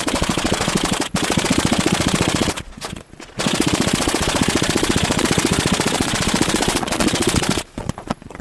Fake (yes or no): yes